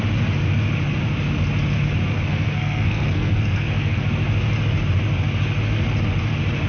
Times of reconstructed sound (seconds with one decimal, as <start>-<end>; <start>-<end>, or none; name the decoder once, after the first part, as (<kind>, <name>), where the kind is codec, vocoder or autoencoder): 2.3-4.0 (codec, SNAC)